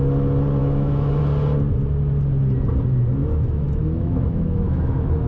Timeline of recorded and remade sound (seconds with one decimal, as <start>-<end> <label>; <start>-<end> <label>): 0.0-0.6 recorded; 0.6-1.2 remade; 1.2-3.2 recorded; 3.2-5.3 remade